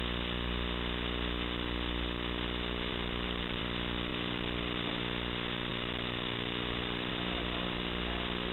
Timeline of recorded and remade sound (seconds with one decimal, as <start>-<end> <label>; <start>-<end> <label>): 0.0-2.9 recorded; 2.9-3.6 remade; 3.6-4.1 recorded; 4.1-4.9 remade; 4.9-5.7 recorded; 5.7-7.1 remade; 7.1-8.5 recorded